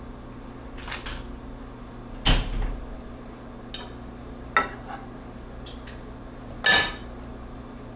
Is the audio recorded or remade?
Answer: recorded